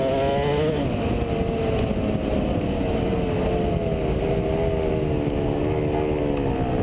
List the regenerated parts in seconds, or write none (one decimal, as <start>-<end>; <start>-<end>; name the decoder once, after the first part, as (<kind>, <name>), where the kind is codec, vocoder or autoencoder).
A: none